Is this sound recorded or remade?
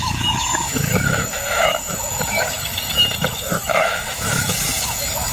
remade